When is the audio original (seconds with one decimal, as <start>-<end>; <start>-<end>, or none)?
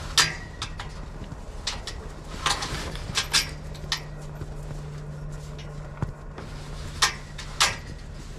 0.0-8.4